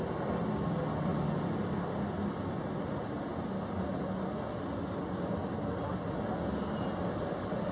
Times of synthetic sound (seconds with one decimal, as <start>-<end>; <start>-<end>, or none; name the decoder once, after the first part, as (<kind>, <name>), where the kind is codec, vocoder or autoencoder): none